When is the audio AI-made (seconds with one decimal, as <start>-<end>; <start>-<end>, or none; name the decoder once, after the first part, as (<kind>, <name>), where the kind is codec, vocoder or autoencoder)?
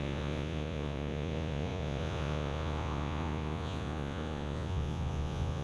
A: 0.0-5.6 (vocoder, Vocos)